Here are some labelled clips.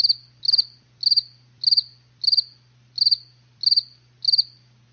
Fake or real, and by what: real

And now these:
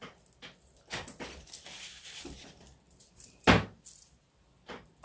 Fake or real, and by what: real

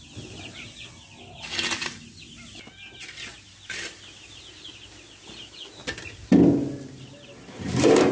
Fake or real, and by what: real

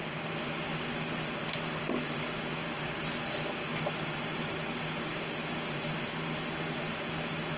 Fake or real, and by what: real